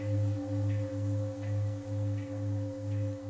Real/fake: fake